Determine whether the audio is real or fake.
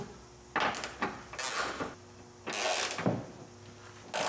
real